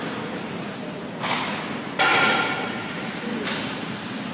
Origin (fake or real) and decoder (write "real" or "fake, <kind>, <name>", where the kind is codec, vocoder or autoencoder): real